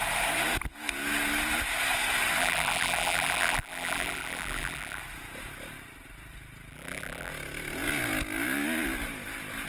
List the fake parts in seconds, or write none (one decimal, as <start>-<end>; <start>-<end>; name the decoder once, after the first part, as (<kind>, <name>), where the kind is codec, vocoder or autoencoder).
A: 2.4-5.0 (vocoder, BigVGAN v2); 6.7-7.3